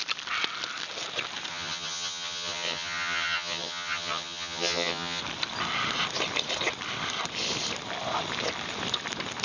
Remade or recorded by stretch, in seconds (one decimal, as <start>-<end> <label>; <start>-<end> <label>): 0.0-1.5 recorded; 1.5-5.2 remade; 5.2-9.4 recorded